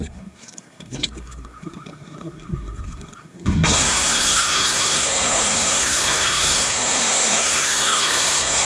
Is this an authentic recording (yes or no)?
no